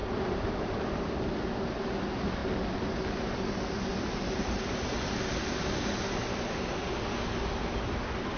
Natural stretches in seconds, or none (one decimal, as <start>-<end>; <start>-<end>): 0.7-3.9; 5.1-8.4